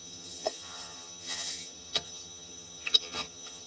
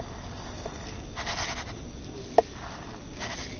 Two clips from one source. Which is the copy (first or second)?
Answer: first